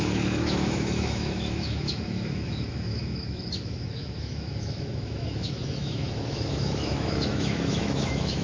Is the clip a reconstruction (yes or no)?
yes